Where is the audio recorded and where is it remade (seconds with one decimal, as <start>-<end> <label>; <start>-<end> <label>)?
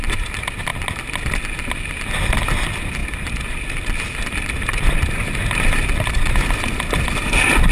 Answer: 0.0-7.7 recorded